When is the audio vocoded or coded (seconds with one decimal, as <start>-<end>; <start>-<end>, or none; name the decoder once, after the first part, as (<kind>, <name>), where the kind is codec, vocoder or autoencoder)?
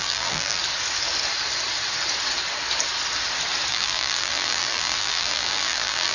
0.0-0.6 (vocoder, BigVGAN v2); 3.7-6.1